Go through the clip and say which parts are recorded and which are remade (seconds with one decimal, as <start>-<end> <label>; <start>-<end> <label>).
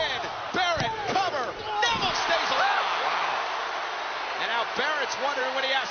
0.0-5.9 recorded